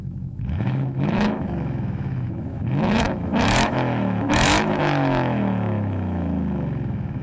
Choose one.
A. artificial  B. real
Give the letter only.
A